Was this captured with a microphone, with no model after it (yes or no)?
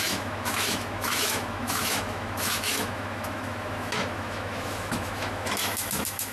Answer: no